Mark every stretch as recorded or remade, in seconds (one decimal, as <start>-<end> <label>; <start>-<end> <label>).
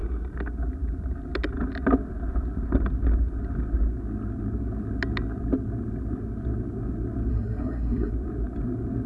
0.0-7.3 recorded; 7.3-8.1 remade; 8.1-9.1 recorded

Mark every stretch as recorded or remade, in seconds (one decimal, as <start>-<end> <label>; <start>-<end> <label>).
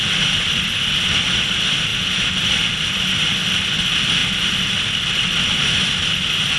0.0-6.6 recorded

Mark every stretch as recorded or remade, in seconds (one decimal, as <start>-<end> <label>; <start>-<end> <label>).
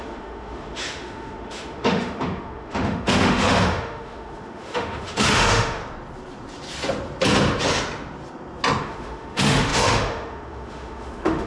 0.0-5.8 remade; 5.8-8.8 recorded; 8.8-11.5 remade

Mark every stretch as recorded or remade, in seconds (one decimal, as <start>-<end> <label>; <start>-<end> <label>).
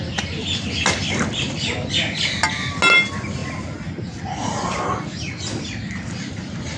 0.0-6.8 recorded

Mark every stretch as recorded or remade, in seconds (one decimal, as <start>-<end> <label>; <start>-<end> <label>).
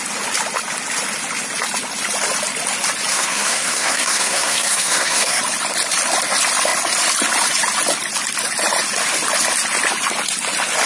0.0-3.1 recorded; 3.1-5.4 remade; 5.4-10.9 recorded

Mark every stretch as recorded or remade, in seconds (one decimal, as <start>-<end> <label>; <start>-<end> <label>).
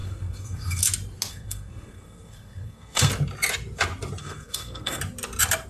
0.0-0.8 remade; 0.8-1.3 recorded; 1.3-3.1 remade; 3.1-4.2 recorded; 4.2-5.0 remade; 5.0-5.7 recorded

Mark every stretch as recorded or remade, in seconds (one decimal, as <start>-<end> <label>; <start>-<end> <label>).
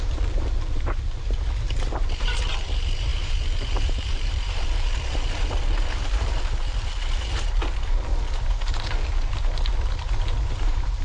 0.0-8.1 remade; 8.1-10.6 recorded; 10.6-11.0 remade